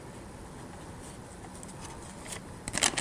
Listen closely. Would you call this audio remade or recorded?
remade